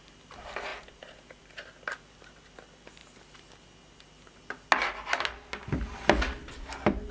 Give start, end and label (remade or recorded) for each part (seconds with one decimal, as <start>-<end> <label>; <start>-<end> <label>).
0.0-7.1 recorded